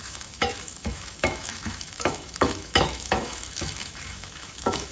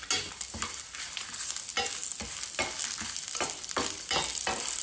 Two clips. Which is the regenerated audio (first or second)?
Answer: first